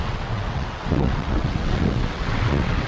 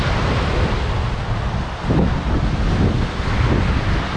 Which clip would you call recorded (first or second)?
second